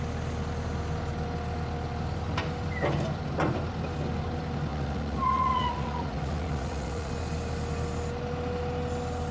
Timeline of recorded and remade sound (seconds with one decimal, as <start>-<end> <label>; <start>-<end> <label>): 0.0-4.7 recorded; 4.7-7.1 remade; 7.1-9.3 recorded